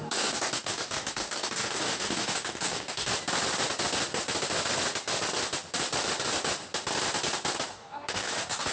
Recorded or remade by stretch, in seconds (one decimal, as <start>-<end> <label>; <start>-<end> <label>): 0.0-3.1 remade; 3.1-7.7 recorded; 7.7-8.7 remade